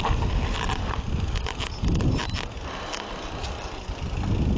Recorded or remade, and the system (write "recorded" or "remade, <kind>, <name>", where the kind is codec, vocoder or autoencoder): recorded